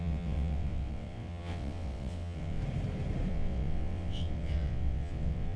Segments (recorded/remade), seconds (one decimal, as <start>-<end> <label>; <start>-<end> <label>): 0.0-2.6 remade; 2.6-3.3 recorded; 3.3-5.6 remade